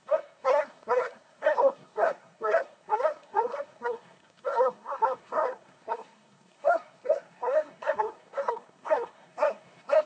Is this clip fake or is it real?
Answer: fake